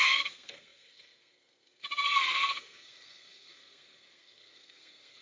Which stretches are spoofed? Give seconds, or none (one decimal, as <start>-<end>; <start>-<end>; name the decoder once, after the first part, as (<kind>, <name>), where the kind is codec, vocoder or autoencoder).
0.0-5.2 (codec, SNAC)